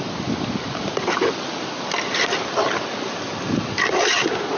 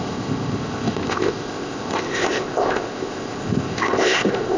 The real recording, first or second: first